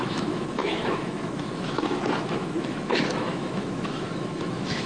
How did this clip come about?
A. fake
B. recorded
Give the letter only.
A